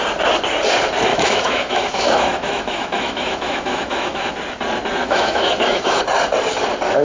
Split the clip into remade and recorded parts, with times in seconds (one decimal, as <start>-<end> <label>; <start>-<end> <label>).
0.0-1.1 recorded; 1.1-4.3 remade; 4.3-5.0 recorded; 5.0-6.0 remade; 6.0-7.0 recorded